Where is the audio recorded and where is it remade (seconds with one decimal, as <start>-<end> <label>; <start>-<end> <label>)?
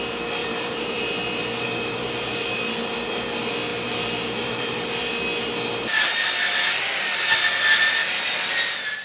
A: 0.0-0.4 recorded; 0.4-2.7 remade; 2.7-3.7 recorded; 3.7-5.1 remade; 5.1-9.0 recorded